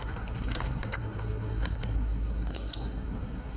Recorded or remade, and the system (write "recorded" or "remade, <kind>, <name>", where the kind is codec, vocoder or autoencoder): remade, codec, SNAC